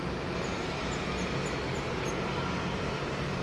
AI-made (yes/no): yes